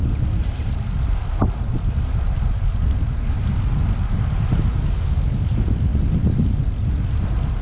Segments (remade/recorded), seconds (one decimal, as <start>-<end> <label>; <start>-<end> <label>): 0.0-7.6 recorded